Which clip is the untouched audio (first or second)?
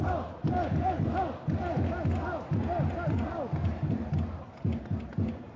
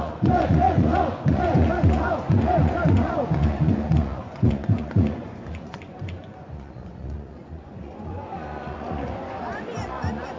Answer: first